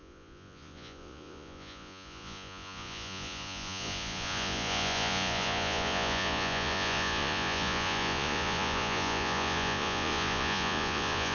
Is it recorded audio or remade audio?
remade